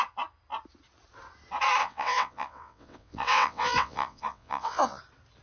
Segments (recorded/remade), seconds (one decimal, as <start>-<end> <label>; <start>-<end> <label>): 0.0-1.8 recorded; 1.8-5.0 remade; 5.0-5.4 recorded